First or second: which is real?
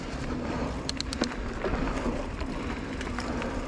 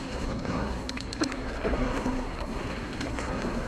first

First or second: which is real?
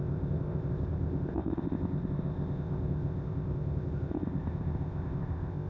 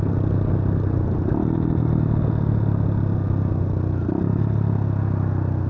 second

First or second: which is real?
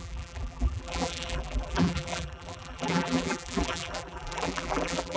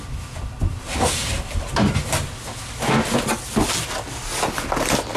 second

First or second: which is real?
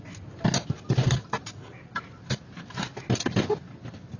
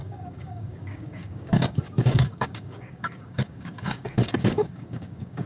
first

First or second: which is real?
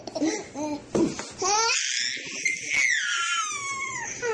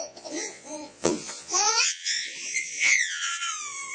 first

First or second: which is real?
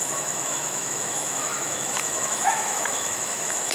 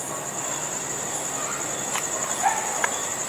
second